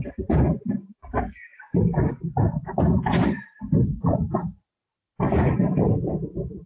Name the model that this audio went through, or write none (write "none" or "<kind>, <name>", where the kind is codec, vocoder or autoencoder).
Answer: vocoder, BigVGAN v2